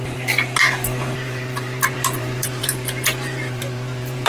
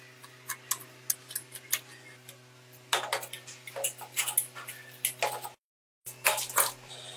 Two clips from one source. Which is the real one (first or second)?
second